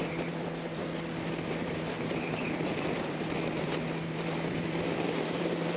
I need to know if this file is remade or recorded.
remade